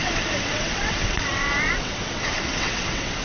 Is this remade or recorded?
remade